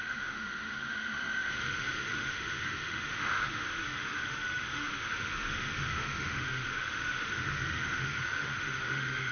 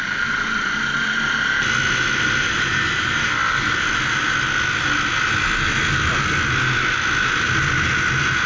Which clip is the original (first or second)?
second